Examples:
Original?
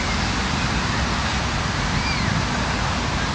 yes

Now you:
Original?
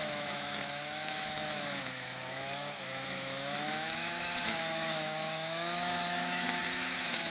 no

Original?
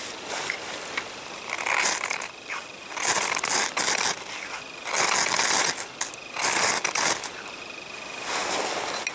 yes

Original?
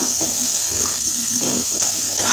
no